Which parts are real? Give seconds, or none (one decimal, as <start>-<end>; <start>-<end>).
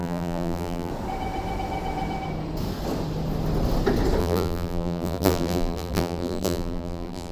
0.9-4.2